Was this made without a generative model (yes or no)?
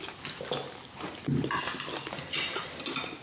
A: yes